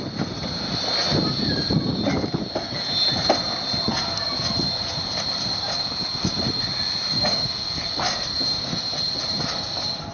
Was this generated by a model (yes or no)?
no